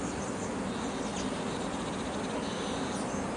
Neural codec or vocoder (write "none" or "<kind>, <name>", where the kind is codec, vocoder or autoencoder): none